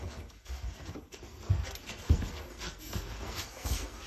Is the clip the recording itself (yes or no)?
no